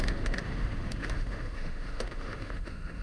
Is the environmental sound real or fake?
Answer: fake